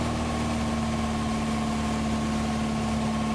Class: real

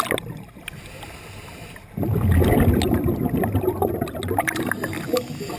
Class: real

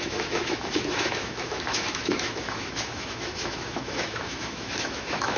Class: fake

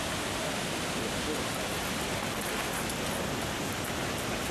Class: real